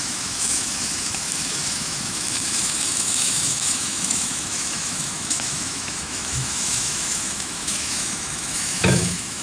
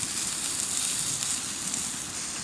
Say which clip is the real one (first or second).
second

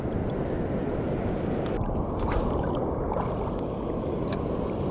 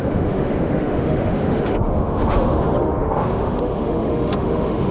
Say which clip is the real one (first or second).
first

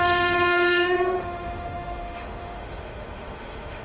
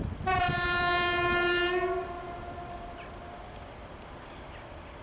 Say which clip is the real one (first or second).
second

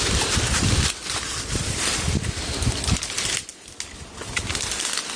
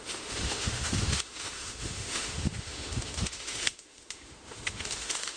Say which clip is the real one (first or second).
first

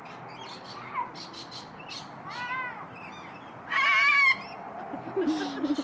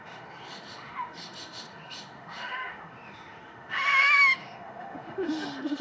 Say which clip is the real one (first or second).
first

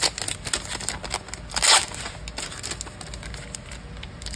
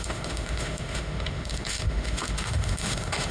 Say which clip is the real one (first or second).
first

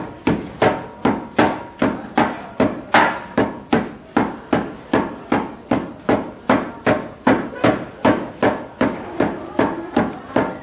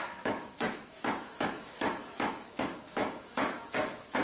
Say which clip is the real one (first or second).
first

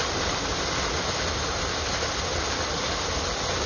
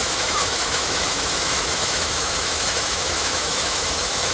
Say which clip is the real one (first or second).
first